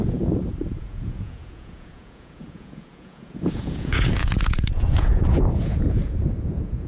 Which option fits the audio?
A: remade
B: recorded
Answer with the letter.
A